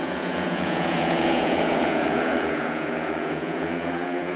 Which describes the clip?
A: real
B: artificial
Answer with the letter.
B